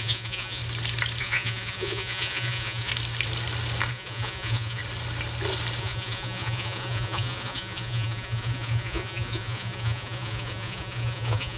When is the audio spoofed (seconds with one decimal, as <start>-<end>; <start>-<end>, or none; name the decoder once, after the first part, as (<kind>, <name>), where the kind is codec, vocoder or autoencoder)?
0.0-0.6 (vocoder, Vocos); 1.2-2.9; 3.9-4.8; 5.8-11.6